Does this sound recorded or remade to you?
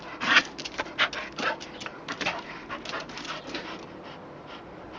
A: recorded